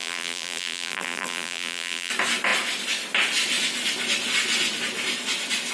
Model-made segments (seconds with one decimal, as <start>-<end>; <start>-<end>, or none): 0.0-2.1